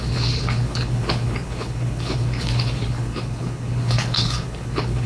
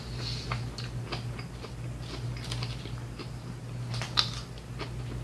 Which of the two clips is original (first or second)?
second